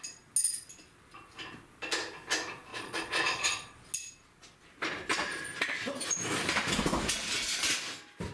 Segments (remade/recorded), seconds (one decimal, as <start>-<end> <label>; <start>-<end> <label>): 0.0-2.7 recorded; 2.7-3.9 remade; 3.9-8.3 recorded